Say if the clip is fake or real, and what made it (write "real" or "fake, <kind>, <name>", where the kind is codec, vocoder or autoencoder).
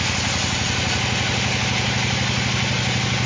real